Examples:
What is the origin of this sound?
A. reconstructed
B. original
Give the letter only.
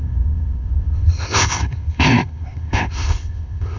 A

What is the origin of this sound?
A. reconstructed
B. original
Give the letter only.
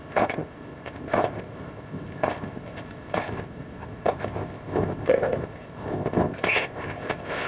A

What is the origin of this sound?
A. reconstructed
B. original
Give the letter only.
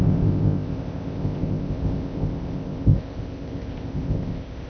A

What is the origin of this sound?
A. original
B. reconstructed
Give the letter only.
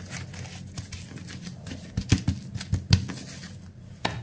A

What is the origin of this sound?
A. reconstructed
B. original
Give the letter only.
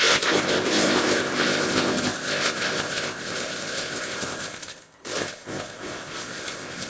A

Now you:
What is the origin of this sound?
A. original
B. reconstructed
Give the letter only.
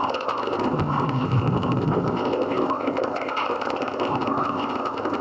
B